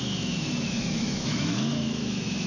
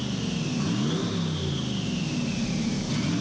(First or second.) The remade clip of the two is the first